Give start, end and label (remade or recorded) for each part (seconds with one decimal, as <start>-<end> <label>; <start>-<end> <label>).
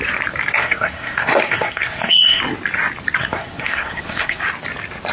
0.0-0.6 recorded; 0.6-2.4 remade; 2.4-3.2 recorded; 3.2-4.4 remade; 4.4-5.1 recorded